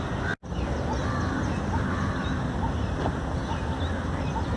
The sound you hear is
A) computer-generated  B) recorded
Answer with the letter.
B